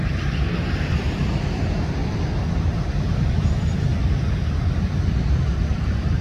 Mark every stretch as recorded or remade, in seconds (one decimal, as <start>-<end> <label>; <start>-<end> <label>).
0.0-2.0 remade; 2.0-2.6 recorded; 2.6-3.9 remade; 3.9-5.1 recorded; 5.1-6.2 remade